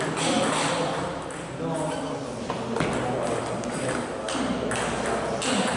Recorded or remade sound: recorded